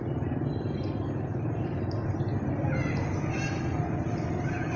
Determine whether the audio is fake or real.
real